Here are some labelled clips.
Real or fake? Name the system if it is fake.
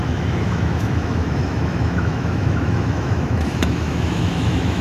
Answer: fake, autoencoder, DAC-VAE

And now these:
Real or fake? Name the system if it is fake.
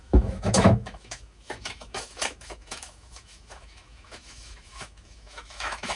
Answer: fake, autoencoder, DAC-VAE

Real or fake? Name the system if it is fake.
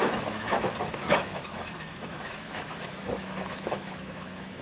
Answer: fake, autoencoder, DAC-VAE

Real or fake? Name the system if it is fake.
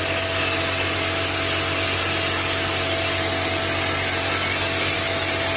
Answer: real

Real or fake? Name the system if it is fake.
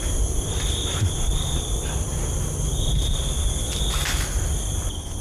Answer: real